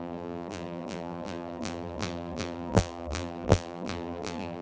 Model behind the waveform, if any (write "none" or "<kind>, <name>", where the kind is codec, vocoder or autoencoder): vocoder, BigVGAN v2